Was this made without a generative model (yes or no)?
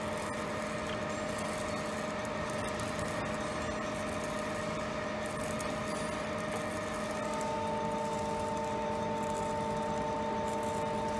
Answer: yes